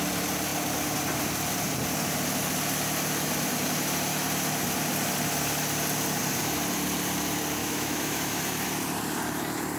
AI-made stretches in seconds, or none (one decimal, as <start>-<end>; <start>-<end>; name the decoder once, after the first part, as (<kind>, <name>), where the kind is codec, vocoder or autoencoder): 7.6-8.4 (autoencoder, DAC-VAE)